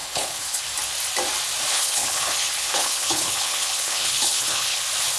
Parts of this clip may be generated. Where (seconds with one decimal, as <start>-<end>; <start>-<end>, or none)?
0.0-0.6; 1.7-4.8